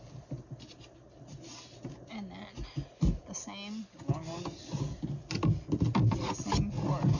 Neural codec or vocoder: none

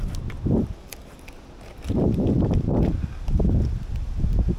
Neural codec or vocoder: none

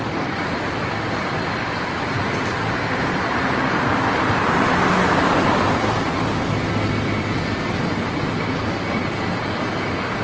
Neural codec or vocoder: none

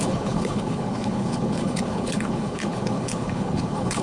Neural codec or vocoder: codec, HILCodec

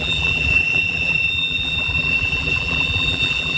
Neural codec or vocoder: vocoder, BigVGAN v2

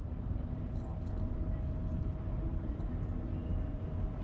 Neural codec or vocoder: none